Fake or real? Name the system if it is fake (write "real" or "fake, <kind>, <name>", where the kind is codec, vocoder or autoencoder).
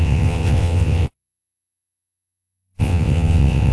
fake, vocoder, WaveNeXt